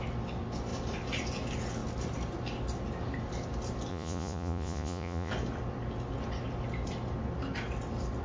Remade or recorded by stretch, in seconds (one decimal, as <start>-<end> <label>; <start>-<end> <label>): 0.0-3.9 recorded; 3.9-5.3 remade; 5.3-8.2 recorded